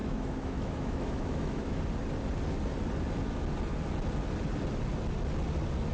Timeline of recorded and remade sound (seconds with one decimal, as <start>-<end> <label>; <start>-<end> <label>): 0.0-1.8 remade; 1.8-5.9 recorded